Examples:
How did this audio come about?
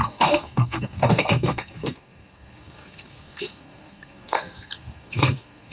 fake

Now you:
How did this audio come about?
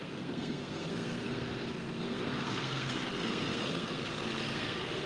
fake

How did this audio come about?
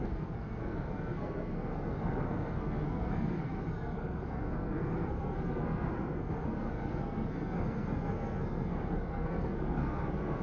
fake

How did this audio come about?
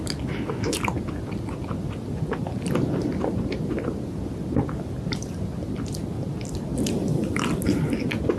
real